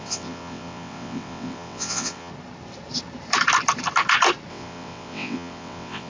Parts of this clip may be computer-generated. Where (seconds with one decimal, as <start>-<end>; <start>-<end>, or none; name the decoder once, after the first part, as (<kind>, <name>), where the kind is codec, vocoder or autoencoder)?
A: 0.0-2.3 (vocoder, WaveNeXt); 4.5-6.1